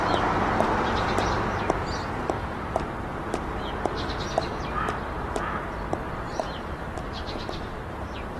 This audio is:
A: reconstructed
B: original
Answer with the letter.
A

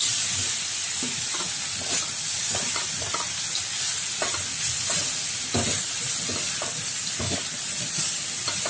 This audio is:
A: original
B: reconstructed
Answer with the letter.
A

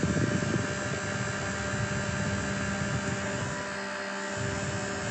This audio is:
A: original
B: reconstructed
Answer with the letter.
A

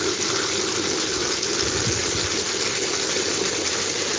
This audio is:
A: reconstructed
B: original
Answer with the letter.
B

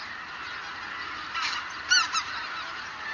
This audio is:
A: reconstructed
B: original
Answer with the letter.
B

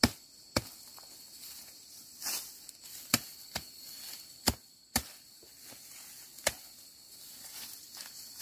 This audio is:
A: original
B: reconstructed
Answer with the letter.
A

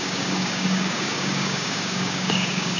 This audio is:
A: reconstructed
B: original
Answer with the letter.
A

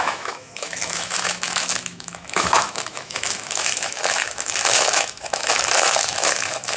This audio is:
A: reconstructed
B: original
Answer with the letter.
A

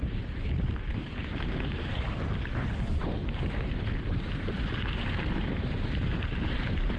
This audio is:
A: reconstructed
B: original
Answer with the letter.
A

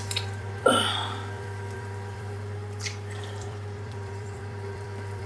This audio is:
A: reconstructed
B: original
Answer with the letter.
A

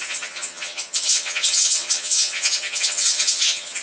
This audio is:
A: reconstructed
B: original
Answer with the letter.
A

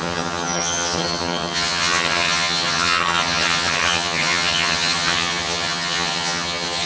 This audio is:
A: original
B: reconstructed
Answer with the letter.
B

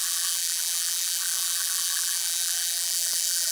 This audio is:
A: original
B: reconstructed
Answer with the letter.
B